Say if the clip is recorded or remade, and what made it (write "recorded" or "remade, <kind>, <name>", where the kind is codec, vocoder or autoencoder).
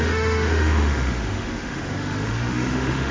remade, autoencoder, DAC-VAE